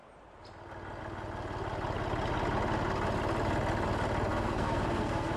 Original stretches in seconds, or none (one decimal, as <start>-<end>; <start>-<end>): 0.0-4.3